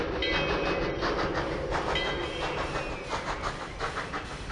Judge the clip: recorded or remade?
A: recorded